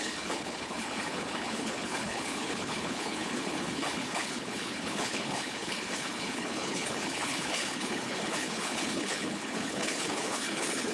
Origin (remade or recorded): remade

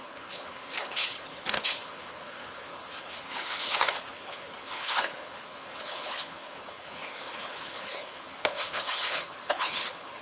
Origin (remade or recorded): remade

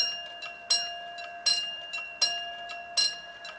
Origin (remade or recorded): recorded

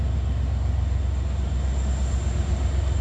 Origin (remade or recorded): recorded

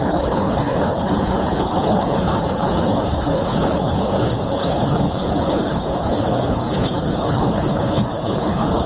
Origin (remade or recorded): remade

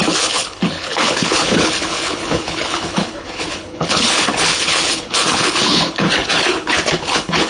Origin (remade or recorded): remade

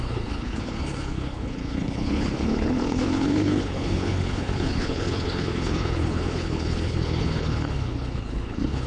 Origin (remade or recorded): remade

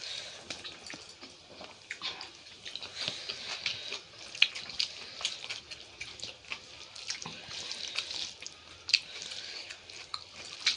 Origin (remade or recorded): recorded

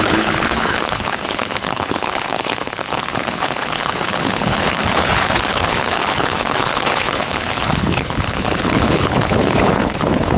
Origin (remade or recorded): remade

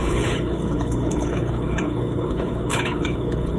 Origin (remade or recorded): remade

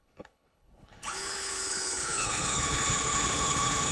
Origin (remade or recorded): remade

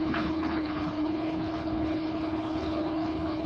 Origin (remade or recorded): remade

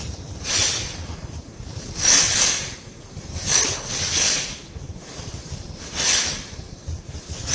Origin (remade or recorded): recorded